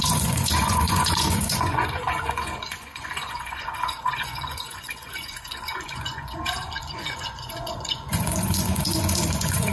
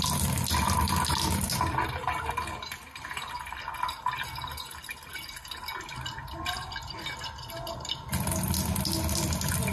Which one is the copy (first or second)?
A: first